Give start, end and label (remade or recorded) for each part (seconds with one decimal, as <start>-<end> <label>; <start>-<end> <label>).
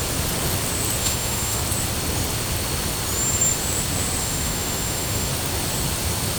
0.0-1.0 recorded; 1.0-1.6 remade; 1.6-4.2 recorded; 4.2-5.3 remade; 5.3-6.4 recorded